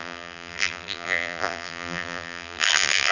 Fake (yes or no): yes